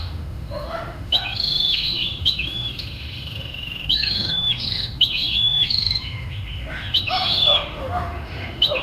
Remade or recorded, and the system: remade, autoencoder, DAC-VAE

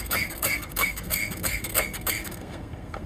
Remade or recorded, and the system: remade, codec, SNAC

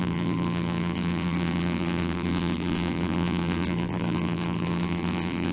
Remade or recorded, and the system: remade, vocoder, BigVGAN v2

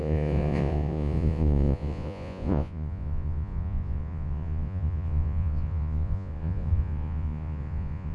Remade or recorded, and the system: remade, vocoder, Vocos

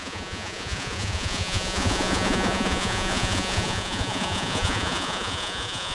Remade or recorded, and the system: remade, vocoder, Vocos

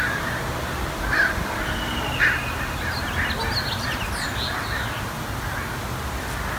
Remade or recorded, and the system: recorded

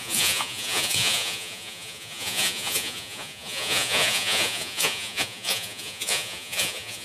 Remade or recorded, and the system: remade, vocoder, Vocos